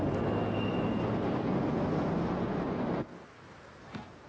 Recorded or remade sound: recorded